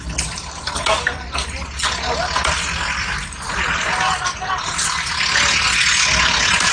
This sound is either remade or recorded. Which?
recorded